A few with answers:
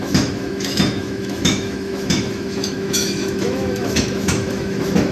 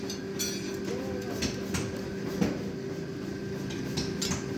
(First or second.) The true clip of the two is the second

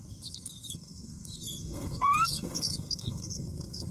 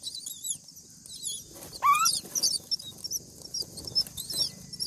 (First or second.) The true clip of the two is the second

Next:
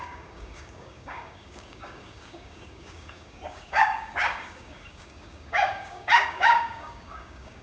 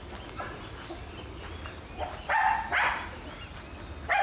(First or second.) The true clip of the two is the second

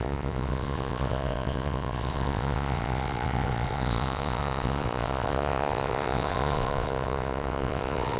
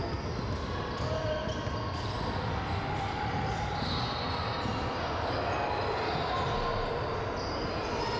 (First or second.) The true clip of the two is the second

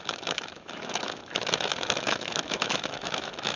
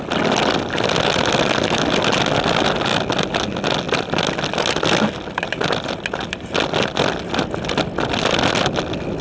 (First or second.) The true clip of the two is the second